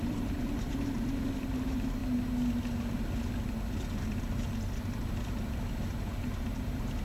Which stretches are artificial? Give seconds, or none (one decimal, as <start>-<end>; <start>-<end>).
0.0-2.0; 4.3-5.0; 5.9-7.0